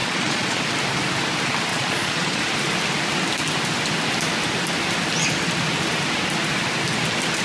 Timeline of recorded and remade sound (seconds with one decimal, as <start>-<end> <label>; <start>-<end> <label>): 0.0-0.6 remade; 0.6-1.7 recorded; 1.7-2.4 remade; 2.4-7.4 recorded